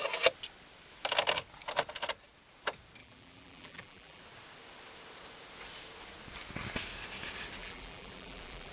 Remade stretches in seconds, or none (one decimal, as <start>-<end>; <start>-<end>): 3.0-4.2; 7.6-8.7